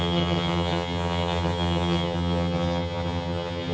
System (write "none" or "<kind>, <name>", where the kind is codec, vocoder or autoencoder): vocoder, HiFi-GAN